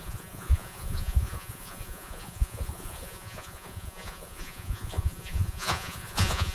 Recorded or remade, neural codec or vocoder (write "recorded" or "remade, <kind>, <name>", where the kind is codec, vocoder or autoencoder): remade, vocoder, Vocos